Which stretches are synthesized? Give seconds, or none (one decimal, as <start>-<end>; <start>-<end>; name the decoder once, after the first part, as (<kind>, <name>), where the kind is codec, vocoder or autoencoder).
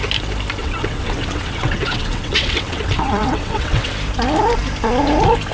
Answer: 0.6-3.9 (vocoder, WaveNeXt)